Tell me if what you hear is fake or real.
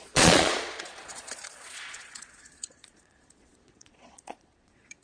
fake